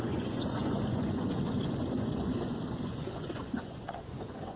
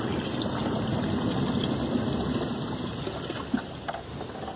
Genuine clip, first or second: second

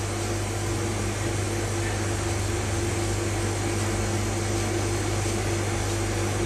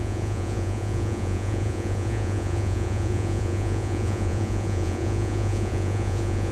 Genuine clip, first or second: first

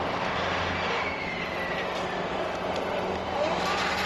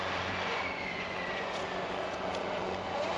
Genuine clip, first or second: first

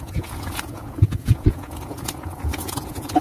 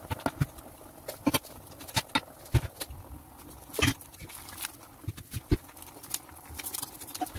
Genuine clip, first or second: second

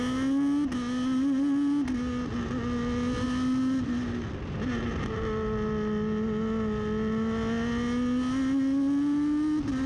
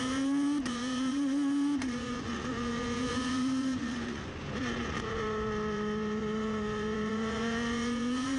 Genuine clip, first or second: first